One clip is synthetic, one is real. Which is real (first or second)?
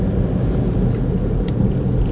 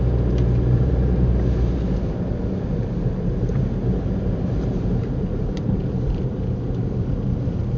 first